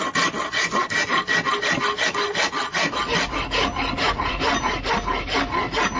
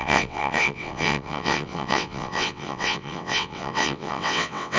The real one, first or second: first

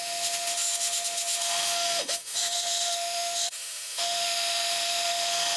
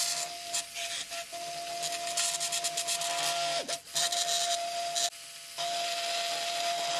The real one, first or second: second